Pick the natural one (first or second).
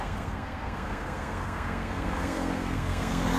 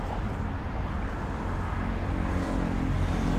second